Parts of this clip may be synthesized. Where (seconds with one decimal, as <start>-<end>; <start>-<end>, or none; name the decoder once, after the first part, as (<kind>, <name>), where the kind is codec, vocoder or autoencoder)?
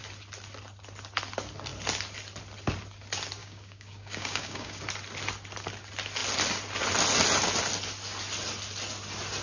3.4-4.8 (codec, DAC)